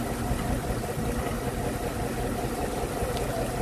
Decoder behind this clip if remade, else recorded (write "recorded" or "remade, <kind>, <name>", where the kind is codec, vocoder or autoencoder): recorded